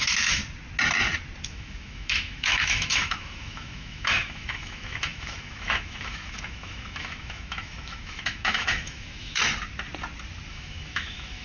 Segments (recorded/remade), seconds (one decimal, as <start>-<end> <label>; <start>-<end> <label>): 0.0-0.4 remade; 0.4-1.4 recorded; 1.4-9.4 remade; 9.4-10.5 recorded; 10.5-11.4 remade

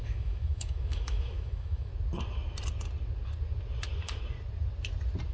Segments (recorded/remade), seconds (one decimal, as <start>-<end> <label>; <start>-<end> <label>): 0.0-1.9 remade; 1.9-5.3 recorded

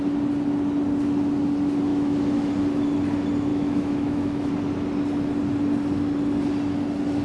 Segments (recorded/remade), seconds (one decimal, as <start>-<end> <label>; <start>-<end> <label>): 0.0-1.9 recorded; 1.9-2.5 remade; 2.5-3.5 recorded; 3.5-4.5 remade; 4.5-7.2 recorded

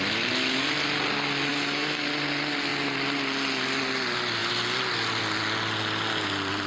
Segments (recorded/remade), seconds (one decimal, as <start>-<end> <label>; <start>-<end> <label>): 0.0-1.5 recorded; 1.5-2.0 remade; 2.0-6.7 recorded

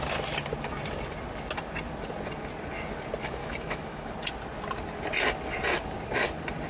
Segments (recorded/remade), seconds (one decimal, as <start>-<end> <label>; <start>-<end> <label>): 0.0-3.4 recorded; 3.4-4.1 remade; 4.1-6.7 recorded

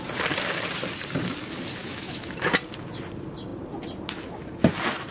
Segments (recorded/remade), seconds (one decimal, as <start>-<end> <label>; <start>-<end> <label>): 0.0-1.8 recorded; 1.8-2.5 remade; 2.5-5.1 recorded